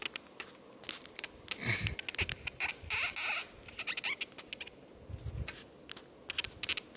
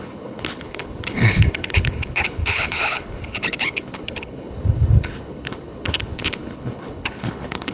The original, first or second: first